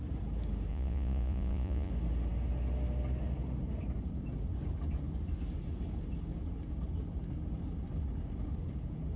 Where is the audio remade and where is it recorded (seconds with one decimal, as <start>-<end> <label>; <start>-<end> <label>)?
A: 0.0-0.7 recorded; 0.7-1.9 remade; 1.9-9.2 recorded